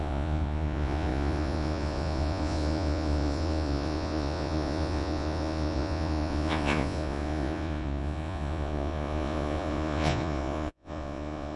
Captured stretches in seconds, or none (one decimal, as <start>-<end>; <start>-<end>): none